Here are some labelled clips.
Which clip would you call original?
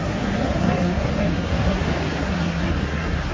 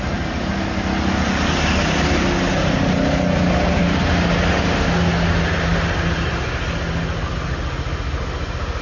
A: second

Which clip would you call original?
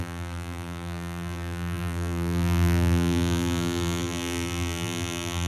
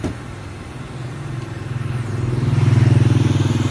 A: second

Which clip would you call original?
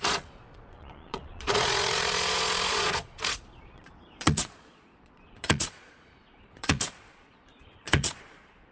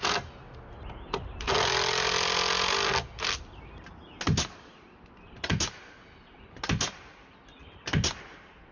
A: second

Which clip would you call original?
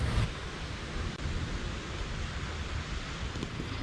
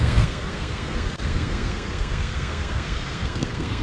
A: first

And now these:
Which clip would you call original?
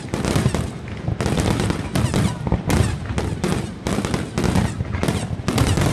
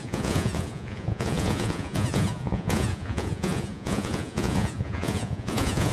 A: first